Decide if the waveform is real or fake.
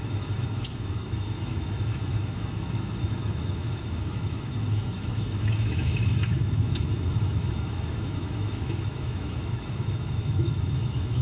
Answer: fake